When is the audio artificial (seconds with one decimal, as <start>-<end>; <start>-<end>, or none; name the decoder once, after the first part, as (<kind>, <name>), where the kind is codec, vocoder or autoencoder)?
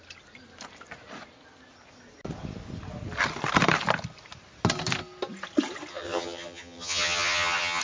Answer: 5.9-7.8 (vocoder, HiFi-GAN)